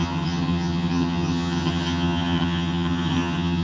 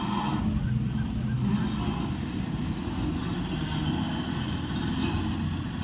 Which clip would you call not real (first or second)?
first